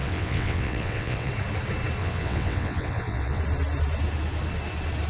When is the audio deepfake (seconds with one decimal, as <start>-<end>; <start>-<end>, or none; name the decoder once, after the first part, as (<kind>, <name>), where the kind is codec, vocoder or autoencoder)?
0.0-1.3 (vocoder, WaveNeXt); 2.0-3.4